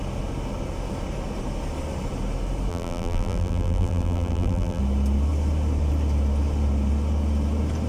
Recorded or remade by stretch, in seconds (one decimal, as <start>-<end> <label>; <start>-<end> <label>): 0.0-2.7 recorded; 2.7-4.8 remade; 4.8-7.9 recorded